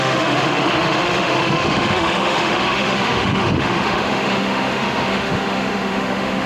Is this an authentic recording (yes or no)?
no